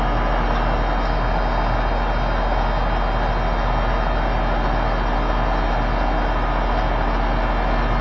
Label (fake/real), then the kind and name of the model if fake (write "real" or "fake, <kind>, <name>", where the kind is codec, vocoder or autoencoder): real